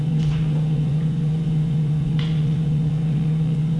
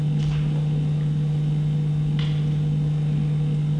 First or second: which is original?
second